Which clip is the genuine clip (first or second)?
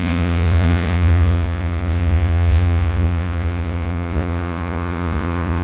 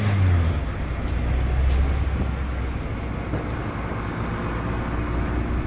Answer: second